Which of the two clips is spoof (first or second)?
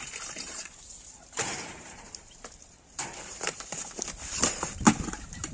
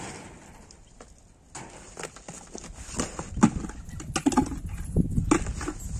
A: first